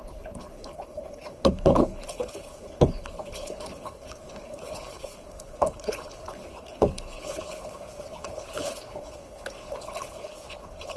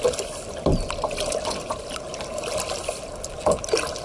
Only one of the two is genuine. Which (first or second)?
second